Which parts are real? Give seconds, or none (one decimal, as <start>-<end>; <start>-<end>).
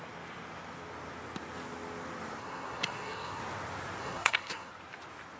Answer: 0.0-2.4; 3.4-4.0; 4.7-5.4